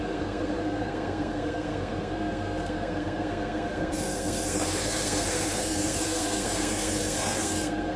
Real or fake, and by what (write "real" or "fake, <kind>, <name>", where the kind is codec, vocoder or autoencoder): fake, codec, SNAC